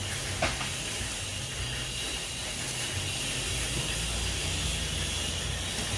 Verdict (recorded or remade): recorded